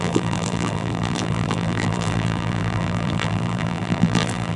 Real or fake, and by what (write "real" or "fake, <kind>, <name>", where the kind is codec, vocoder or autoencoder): fake, vocoder, BigVGAN v2